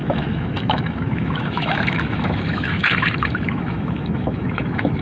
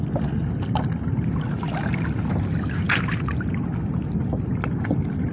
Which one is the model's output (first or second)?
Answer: first